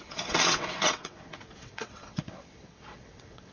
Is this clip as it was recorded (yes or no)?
no